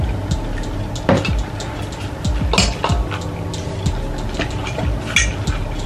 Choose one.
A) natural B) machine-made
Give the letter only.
A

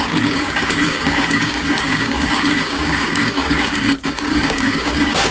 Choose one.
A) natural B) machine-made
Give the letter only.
B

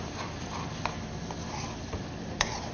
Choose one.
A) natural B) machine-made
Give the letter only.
B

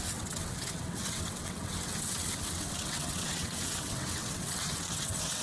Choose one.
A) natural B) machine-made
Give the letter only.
B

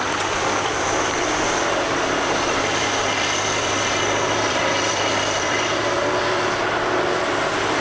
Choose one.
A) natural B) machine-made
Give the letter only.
B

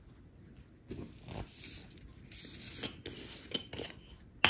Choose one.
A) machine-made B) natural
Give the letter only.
B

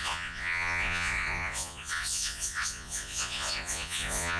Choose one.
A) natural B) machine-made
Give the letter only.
B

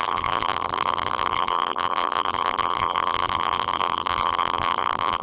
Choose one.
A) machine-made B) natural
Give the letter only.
A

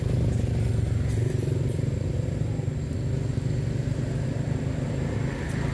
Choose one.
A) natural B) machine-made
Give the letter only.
A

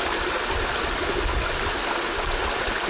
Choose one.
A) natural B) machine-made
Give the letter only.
A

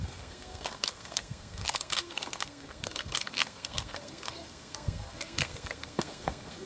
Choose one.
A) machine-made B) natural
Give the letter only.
A